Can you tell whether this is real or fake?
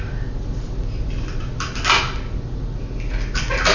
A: real